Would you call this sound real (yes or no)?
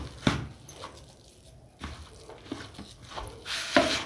yes